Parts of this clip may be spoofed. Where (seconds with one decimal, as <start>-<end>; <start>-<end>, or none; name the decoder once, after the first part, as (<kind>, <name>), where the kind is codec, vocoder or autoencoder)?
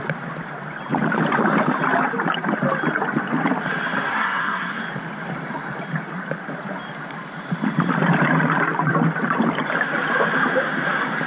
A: 4.1-4.8 (codec, SNAC)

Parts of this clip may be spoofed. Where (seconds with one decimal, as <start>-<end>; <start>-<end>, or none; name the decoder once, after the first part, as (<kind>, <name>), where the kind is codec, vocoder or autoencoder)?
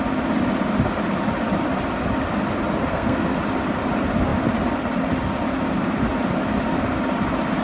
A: 2.9-3.4 (codec, SNAC)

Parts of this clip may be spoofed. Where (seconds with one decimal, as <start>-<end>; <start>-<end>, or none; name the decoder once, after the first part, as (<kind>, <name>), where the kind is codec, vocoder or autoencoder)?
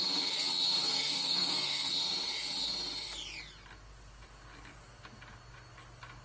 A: 0.8-1.9 (codec, SNAC)